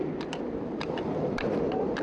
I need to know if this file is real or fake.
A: real